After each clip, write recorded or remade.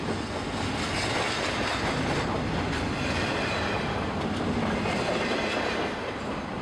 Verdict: recorded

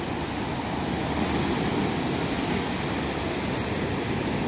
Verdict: recorded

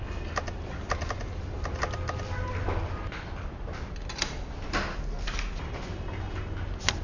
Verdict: recorded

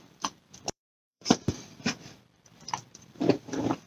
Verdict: remade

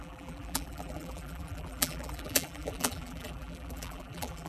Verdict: remade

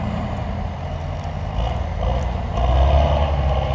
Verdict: recorded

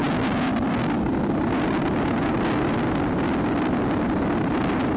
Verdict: recorded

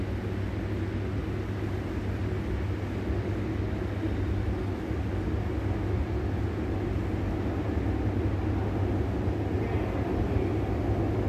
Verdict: recorded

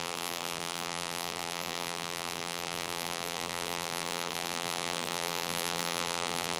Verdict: remade